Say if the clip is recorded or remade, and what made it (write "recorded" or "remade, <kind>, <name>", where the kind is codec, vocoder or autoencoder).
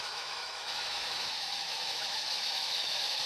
remade, autoencoder, DAC-VAE